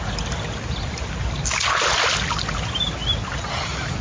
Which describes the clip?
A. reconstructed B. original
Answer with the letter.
B